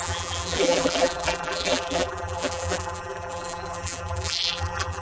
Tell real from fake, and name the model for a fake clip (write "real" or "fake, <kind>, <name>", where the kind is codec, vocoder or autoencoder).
fake, vocoder, BigVGAN v2